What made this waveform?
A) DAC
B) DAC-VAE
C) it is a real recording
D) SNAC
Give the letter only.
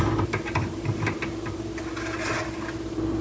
C